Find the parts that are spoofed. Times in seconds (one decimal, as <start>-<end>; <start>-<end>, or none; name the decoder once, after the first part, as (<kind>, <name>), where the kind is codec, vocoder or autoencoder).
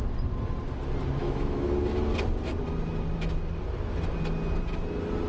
1.2-1.9 (autoencoder, DAC-VAE)